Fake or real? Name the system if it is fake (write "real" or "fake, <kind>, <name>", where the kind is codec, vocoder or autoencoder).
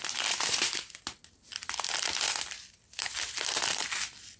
real